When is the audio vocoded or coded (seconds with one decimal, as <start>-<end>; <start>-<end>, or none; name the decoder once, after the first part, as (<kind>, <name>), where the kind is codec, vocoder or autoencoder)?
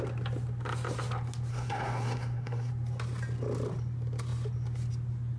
1.5-2.7 (codec, SNAC)